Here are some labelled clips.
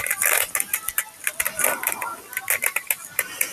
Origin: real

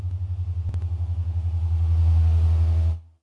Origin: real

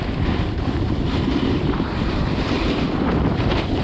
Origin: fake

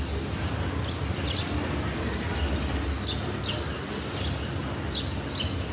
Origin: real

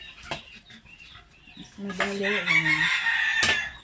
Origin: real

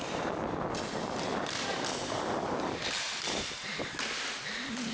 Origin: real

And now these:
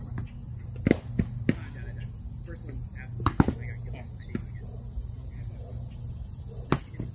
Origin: real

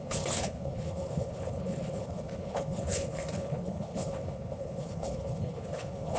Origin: fake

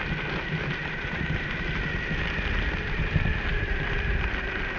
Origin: real